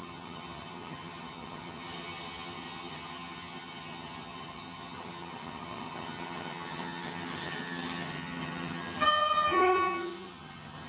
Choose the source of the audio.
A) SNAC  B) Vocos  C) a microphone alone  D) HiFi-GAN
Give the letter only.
D